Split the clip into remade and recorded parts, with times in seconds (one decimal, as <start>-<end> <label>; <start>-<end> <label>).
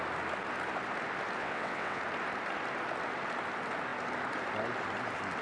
0.0-1.4 recorded; 1.4-2.0 remade; 2.0-5.4 recorded